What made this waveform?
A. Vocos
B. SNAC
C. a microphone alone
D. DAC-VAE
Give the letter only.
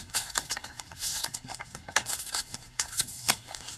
B